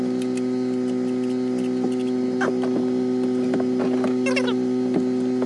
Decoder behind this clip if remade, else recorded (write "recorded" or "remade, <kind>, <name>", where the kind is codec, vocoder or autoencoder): recorded